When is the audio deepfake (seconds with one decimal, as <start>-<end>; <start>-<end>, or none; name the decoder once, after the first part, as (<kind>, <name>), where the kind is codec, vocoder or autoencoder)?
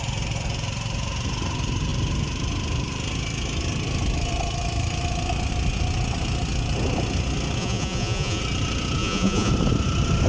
7.6-8.4 (vocoder, Vocos); 9.0-9.5